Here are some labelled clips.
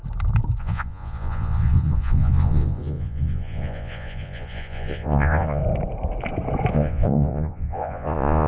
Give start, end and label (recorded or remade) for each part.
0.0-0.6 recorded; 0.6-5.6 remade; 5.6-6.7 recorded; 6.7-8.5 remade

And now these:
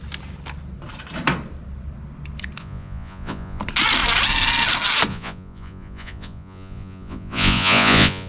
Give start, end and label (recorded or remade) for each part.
0.0-2.6 recorded; 2.6-3.6 remade; 3.6-5.1 recorded; 5.1-8.3 remade

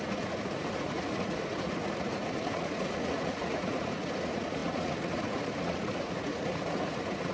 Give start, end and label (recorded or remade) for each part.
0.0-7.3 remade

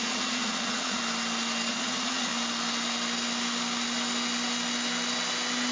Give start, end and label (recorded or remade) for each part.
0.0-1.0 remade; 1.0-1.7 recorded; 1.7-2.3 remade; 2.3-5.7 recorded

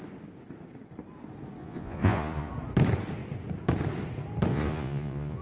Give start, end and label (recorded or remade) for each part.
0.0-1.6 recorded; 1.6-2.5 remade; 2.5-4.5 recorded; 4.5-5.4 remade

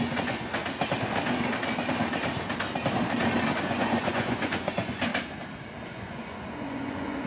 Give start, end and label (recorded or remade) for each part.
0.0-0.6 remade; 0.6-3.6 recorded; 3.6-5.1 remade; 5.1-5.9 recorded; 5.9-7.3 remade

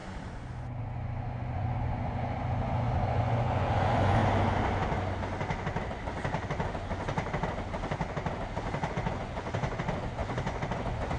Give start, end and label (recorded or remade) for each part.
0.0-4.2 remade; 4.2-8.9 recorded; 8.9-11.2 remade